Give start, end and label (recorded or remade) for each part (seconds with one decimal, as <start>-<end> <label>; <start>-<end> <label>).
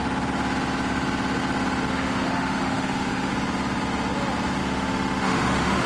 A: 0.0-1.9 recorded; 1.9-3.3 remade; 3.3-4.6 recorded; 4.6-5.9 remade